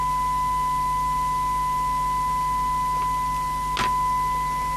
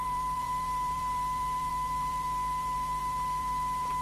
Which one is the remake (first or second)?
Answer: second